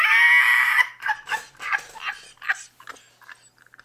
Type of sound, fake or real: real